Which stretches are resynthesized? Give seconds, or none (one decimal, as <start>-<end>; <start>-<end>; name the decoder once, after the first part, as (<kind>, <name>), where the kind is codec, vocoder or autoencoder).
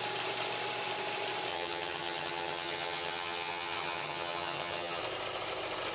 1.5-5.0 (vocoder, HiFi-GAN)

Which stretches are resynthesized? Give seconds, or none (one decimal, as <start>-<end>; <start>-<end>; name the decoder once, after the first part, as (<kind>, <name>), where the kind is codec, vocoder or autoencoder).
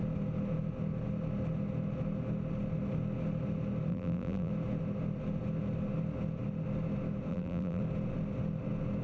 3.9-4.5 (vocoder, BigVGAN v2); 7.3-7.8